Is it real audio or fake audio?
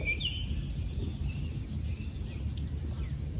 real